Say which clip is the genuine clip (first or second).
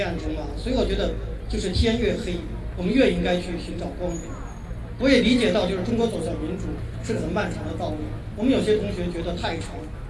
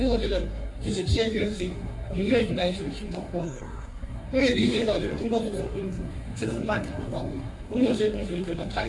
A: first